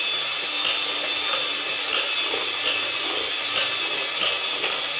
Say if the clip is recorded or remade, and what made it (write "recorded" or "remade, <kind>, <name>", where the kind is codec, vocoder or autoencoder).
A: recorded